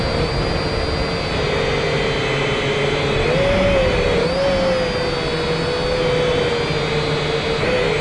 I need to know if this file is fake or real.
real